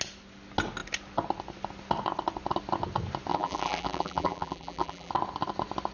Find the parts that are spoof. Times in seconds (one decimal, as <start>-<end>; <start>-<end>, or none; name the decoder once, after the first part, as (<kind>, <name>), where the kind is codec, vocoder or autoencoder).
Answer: 3.3-5.1 (vocoder, BigVGAN v2)